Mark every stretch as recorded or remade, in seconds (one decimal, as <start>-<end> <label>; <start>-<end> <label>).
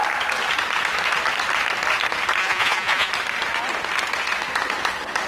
0.0-2.4 recorded; 2.4-3.1 remade; 3.1-5.3 recorded